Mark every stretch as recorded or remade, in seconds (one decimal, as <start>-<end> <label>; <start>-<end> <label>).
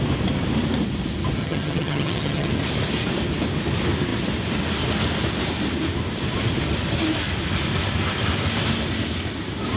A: 0.0-1.4 recorded; 1.4-2.5 remade; 2.5-9.8 recorded